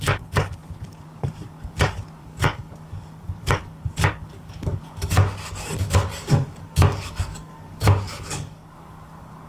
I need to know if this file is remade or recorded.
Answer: remade